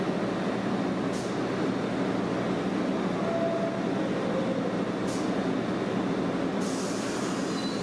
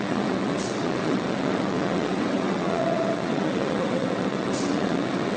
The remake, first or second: second